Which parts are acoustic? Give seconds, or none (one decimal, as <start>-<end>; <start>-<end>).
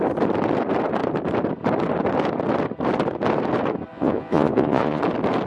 0.0-3.9; 5.0-5.5